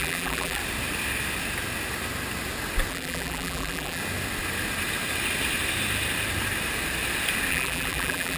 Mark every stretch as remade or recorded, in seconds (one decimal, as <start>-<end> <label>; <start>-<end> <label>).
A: 0.0-0.6 remade; 0.6-2.9 recorded; 2.9-4.0 remade; 4.0-7.5 recorded; 7.5-8.4 remade

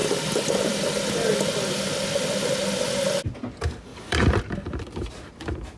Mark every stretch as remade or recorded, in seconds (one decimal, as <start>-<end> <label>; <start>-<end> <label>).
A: 0.0-1.1 remade; 1.1-3.9 recorded; 3.9-5.1 remade; 5.1-5.8 recorded